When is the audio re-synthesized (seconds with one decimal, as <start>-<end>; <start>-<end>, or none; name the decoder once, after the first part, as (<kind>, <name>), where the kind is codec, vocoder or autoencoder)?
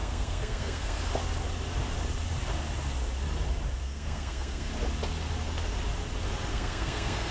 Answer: 0.0-1.0 (codec, SNAC); 3.8-4.7; 6.5-7.3